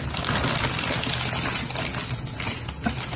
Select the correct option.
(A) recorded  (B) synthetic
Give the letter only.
A